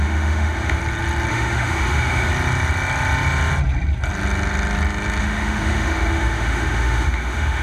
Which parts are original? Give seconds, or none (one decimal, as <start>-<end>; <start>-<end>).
0.8-1.3; 2.3-5.2